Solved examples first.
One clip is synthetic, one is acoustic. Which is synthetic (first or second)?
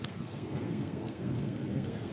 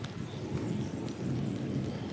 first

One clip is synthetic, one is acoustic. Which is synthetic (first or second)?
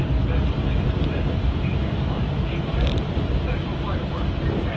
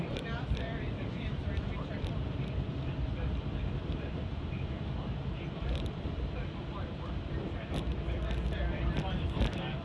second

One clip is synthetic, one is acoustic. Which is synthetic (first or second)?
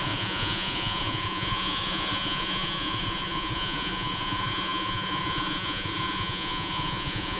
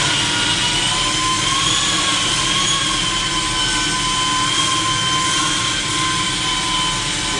first